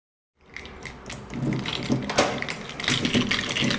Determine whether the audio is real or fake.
real